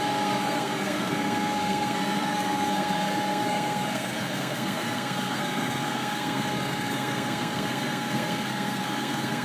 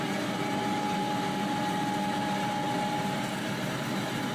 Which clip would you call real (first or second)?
second